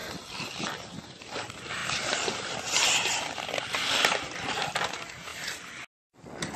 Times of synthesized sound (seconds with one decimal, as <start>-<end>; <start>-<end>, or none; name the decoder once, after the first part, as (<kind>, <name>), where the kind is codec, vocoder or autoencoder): none